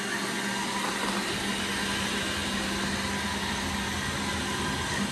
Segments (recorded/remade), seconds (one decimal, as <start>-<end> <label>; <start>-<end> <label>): 0.0-5.1 recorded